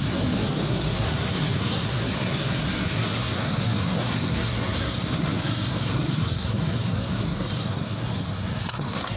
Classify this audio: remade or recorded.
remade